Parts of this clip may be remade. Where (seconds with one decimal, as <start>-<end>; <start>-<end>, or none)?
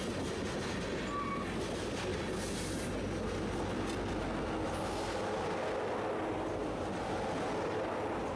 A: none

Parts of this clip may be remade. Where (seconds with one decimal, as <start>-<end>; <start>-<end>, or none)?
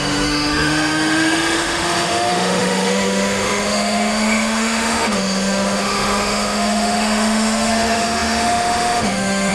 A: 0.0-9.5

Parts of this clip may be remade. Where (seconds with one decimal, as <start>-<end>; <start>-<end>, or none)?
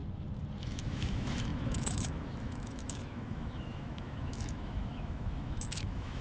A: 0.6-6.2